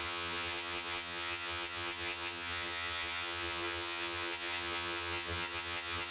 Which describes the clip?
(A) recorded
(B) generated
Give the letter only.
B